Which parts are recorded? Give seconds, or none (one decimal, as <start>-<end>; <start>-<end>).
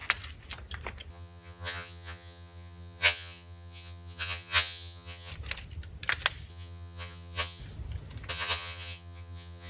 0.0-1.1; 5.3-6.5; 7.6-8.3